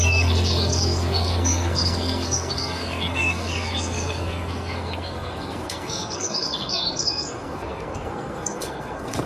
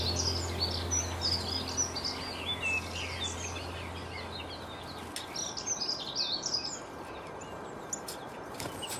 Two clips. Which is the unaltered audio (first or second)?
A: second